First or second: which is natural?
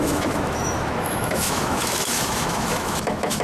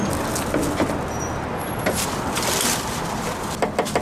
second